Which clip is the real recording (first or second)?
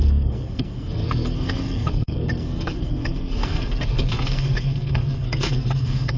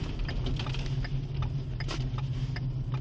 second